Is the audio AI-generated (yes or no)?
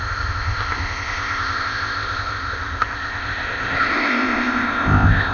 yes